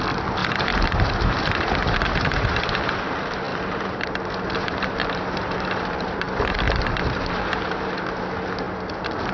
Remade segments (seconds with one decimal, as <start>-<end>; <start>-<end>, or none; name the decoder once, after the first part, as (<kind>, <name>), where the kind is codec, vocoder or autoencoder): 0.4-3.0 (vocoder, BigVGAN v2); 3.5-4.1; 4.6-7.9